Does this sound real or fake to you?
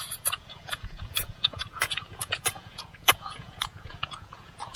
fake